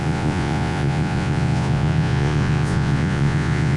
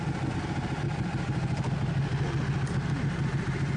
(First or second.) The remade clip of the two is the first